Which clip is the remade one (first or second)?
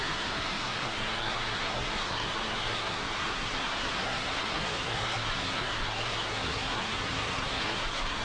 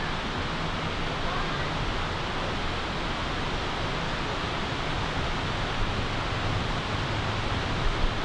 first